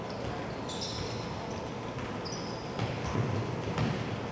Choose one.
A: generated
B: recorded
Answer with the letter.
B